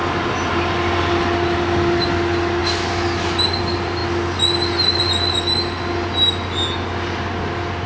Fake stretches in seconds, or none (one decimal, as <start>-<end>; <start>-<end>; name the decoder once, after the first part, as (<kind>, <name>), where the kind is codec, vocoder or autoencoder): none